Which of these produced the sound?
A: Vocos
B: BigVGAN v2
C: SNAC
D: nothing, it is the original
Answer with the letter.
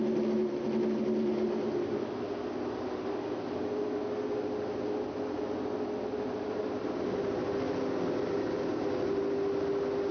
D